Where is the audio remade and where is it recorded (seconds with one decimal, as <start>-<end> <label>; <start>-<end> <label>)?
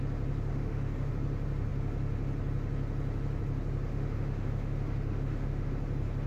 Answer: 0.0-0.5 recorded; 0.5-1.1 remade; 1.1-3.9 recorded; 3.9-5.7 remade; 5.7-6.3 recorded